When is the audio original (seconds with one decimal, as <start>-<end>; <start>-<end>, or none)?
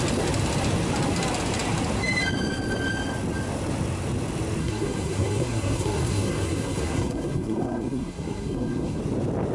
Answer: 0.0-4.6; 9.0-9.5